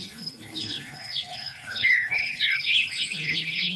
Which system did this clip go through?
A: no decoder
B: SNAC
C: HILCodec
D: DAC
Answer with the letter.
C